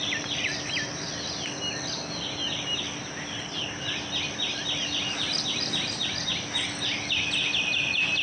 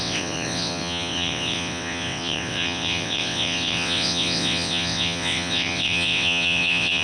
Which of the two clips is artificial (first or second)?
second